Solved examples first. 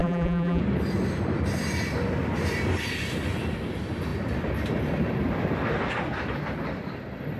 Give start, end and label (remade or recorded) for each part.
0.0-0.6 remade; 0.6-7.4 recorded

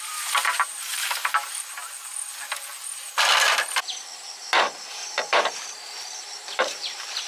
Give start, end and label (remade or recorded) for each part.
0.0-1.8 remade; 1.8-5.1 recorded; 5.1-7.3 remade